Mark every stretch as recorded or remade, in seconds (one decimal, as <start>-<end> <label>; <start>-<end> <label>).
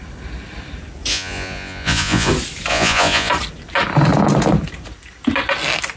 0.0-1.1 recorded; 1.1-2.3 remade; 2.3-2.7 recorded; 2.7-3.3 remade; 3.3-6.0 recorded